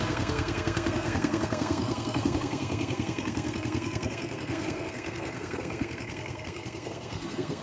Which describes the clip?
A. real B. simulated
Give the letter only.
B